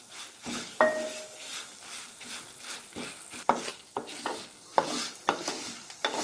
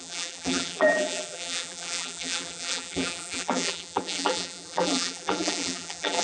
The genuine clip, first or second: first